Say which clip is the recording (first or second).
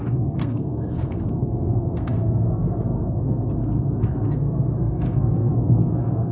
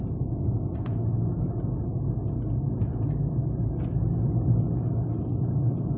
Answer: second